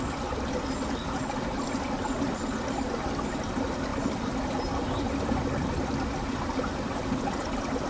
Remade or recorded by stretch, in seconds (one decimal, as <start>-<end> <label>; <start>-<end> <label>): 0.0-7.9 recorded